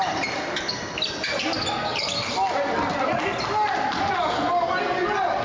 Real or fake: real